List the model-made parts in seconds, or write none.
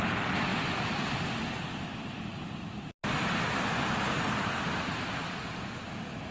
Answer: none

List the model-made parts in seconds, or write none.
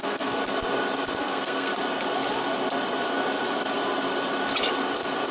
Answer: 0.0-0.4; 1.2-1.7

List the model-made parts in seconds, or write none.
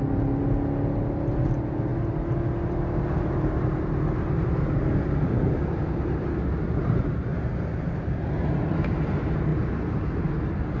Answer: none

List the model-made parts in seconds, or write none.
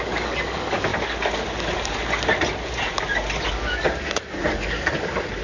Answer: 0.0-0.9; 3.5-5.4